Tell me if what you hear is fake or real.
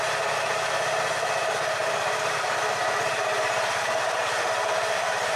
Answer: real